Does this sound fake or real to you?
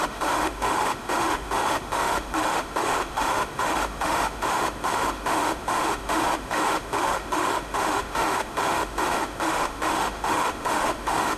fake